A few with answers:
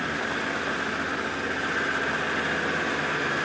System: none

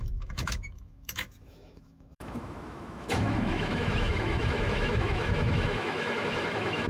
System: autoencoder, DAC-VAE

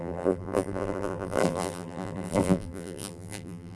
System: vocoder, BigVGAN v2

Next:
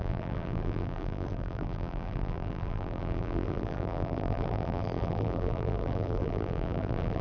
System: vocoder, BigVGAN v2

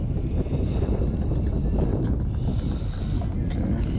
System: none